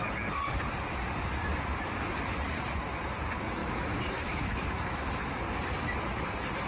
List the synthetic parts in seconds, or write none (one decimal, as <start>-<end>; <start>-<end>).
3.6-5.4